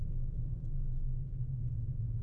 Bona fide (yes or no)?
yes